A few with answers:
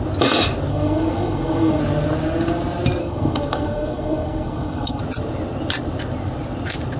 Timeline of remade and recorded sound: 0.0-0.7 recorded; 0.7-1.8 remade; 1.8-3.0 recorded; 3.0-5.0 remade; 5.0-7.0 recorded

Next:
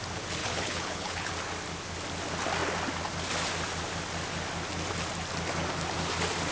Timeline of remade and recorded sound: 0.0-0.4 recorded; 0.4-1.3 remade; 1.3-6.5 recorded

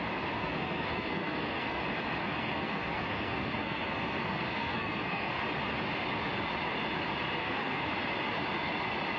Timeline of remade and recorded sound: 0.0-0.4 recorded; 0.4-1.8 remade; 1.8-2.2 recorded; 2.2-5.4 remade; 5.4-7.4 recorded; 7.4-7.9 remade; 7.9-9.2 recorded

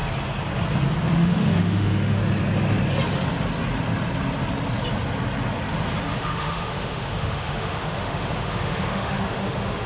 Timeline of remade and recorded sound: 0.0-1.1 recorded; 1.1-2.2 remade; 2.2-6.2 recorded; 6.2-9.9 remade

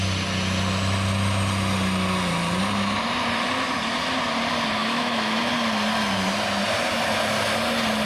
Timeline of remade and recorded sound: 0.0-4.8 recorded; 4.8-5.4 remade; 5.4-8.1 recorded

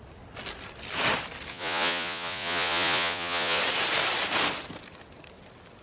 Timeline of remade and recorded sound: 0.0-1.5 recorded; 1.5-3.6 remade; 3.6-5.8 recorded

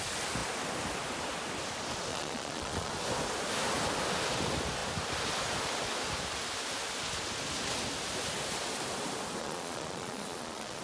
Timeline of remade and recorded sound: 0.0-2.1 recorded; 2.1-2.9 remade; 2.9-9.4 recorded; 9.4-10.8 remade